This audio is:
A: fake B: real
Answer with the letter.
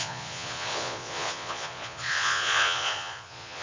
A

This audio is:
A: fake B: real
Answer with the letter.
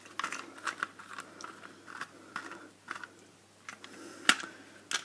B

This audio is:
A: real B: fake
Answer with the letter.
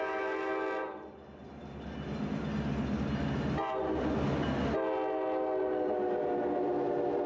A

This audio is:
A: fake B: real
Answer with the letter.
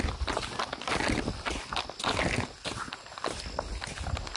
B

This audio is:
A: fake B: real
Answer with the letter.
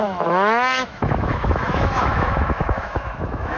A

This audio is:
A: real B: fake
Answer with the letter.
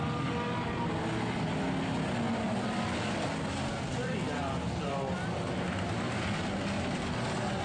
A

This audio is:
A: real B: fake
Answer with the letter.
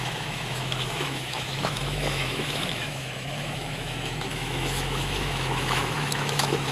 B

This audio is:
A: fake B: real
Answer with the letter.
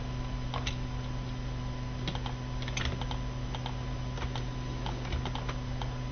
B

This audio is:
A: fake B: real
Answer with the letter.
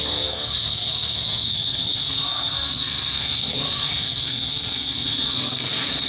A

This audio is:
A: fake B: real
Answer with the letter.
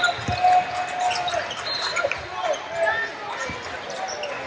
B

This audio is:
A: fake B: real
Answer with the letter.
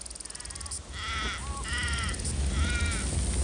B